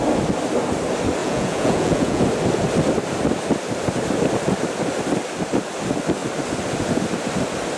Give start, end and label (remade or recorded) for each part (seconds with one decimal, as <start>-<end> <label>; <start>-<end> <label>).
0.0-1.2 recorded; 1.2-2.2 remade; 2.2-7.8 recorded

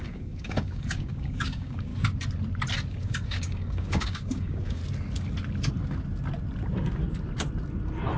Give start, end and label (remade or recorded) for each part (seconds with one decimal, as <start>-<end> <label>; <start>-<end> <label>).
0.0-1.9 remade; 1.9-2.9 recorded; 2.9-4.8 remade; 4.8-8.2 recorded

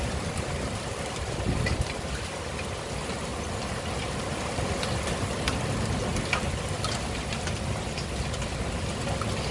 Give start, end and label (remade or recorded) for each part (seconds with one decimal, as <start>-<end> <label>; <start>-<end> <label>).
0.0-9.5 recorded

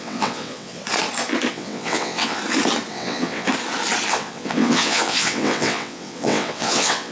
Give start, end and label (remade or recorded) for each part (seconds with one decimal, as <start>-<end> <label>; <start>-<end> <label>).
0.0-0.8 remade; 0.8-1.5 recorded; 1.5-2.4 remade; 2.4-2.9 recorded; 2.9-3.5 remade; 3.5-4.1 recorded; 4.1-7.1 remade